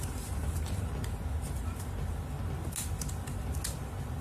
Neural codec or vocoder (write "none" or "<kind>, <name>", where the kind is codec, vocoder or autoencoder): none